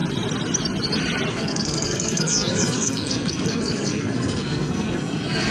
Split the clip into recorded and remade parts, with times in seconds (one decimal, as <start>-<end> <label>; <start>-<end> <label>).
0.0-1.3 recorded; 1.3-5.5 remade